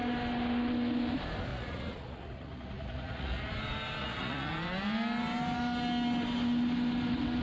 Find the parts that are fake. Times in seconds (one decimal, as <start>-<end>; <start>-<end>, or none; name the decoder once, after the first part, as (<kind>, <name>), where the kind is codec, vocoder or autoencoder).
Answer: 1.5-3.5 (vocoder, Vocos); 4.0-4.5